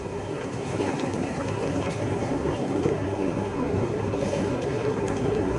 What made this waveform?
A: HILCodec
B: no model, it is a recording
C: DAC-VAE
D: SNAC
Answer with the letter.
D